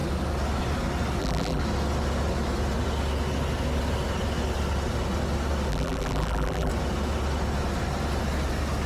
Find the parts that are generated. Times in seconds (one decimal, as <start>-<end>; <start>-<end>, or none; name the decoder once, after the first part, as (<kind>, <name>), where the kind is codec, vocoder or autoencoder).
1.2-1.6 (vocoder, BigVGAN v2); 5.7-6.7